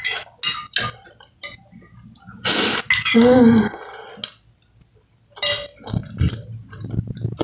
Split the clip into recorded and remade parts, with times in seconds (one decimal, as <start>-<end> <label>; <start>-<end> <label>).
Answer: 0.0-7.4 recorded